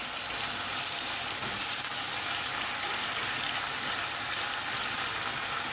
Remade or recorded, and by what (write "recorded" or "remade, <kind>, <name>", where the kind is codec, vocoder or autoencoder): recorded